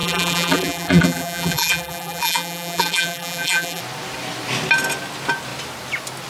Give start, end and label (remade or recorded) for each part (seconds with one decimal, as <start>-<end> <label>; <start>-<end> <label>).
0.0-3.8 remade; 3.8-6.3 recorded